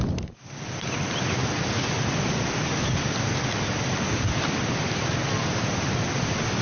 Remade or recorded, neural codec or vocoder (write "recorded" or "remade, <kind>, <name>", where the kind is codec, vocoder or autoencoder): recorded